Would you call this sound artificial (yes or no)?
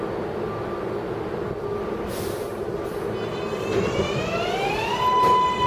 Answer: no